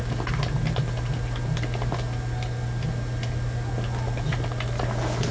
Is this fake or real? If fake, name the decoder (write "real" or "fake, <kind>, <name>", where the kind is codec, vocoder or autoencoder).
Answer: real